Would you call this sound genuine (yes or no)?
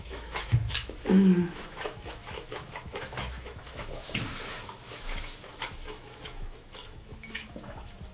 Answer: no